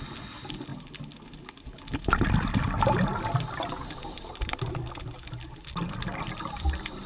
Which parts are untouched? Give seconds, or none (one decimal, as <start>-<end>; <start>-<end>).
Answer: 0.0-7.1